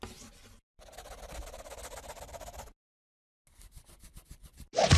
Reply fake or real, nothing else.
real